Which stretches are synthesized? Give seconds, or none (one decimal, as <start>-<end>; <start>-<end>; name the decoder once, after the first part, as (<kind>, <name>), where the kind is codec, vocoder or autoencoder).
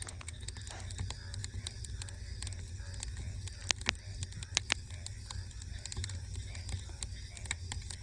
none